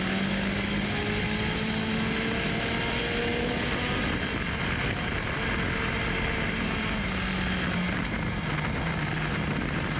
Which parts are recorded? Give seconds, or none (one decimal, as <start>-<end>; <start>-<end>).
0.0-10.0